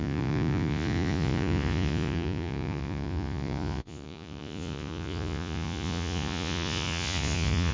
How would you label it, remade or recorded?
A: remade